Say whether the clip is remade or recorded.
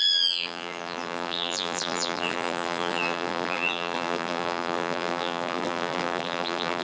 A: remade